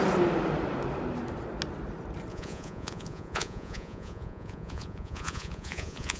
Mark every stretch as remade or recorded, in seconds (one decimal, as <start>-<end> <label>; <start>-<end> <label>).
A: 0.0-2.3 recorded; 2.3-6.2 remade